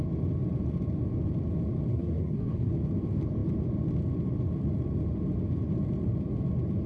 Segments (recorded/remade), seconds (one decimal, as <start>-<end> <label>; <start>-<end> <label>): 0.0-1.9 recorded; 1.9-2.7 remade; 2.7-6.9 recorded

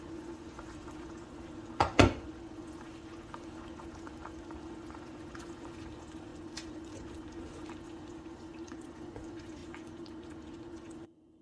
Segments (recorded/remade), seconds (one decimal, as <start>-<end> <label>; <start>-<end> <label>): 0.0-11.4 remade

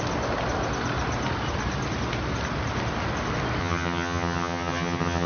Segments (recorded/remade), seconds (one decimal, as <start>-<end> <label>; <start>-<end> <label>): 0.0-3.6 recorded; 3.6-5.3 remade

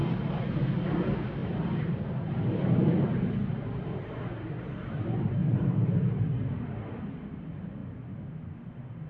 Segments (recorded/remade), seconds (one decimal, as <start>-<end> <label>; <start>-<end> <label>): 0.0-1.4 recorded; 1.4-2.3 remade; 2.3-5.4 recorded; 5.4-7.0 remade; 7.0-9.1 recorded

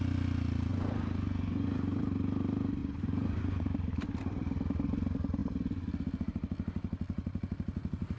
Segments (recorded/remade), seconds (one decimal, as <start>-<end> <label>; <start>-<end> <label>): 0.0-0.7 recorded; 0.7-2.0 remade; 2.0-2.8 recorded; 2.8-3.6 remade; 3.6-8.2 recorded

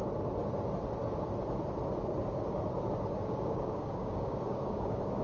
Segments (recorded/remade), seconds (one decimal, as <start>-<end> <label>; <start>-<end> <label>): 0.0-3.1 recorded; 3.1-5.2 remade

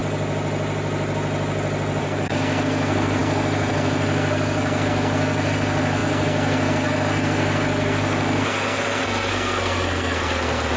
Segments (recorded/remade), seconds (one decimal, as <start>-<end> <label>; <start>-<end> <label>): 0.0-2.0 recorded; 2.0-10.8 remade

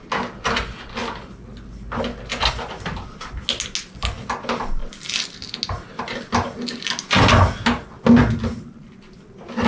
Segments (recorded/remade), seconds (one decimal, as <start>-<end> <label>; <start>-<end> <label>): 0.0-9.7 recorded